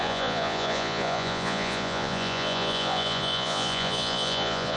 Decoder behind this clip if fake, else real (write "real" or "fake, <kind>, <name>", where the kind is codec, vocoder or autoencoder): fake, vocoder, Vocos